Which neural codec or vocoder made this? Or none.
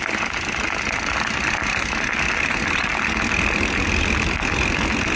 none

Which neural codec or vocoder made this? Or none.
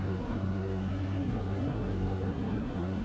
codec, SNAC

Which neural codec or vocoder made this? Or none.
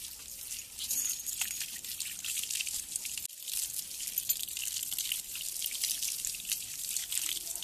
none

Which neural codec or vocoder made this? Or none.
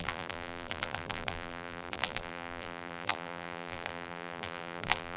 vocoder, BigVGAN v2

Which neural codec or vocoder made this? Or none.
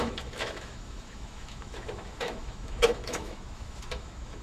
autoencoder, DAC-VAE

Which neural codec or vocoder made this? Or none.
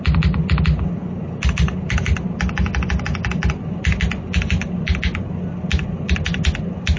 none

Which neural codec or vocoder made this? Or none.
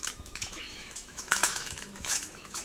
autoencoder, DAC-VAE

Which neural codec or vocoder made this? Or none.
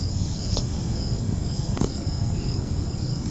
codec, SNAC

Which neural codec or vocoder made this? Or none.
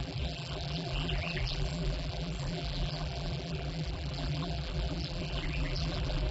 vocoder, BigVGAN v2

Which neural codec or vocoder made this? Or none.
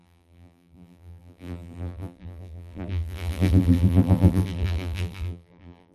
vocoder, BigVGAN v2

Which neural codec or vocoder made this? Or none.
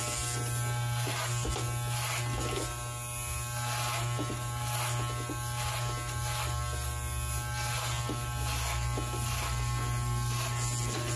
none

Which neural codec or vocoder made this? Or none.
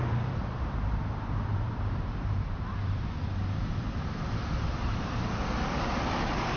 vocoder, BigVGAN v2